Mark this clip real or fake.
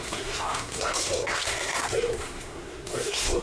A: fake